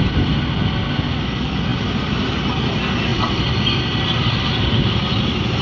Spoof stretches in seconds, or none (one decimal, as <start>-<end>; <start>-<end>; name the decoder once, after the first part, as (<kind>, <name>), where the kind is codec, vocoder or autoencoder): 1.7-2.5 (vocoder, BigVGAN v2); 3.1-4.5